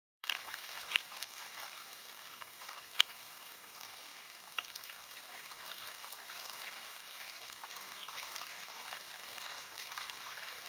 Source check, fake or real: fake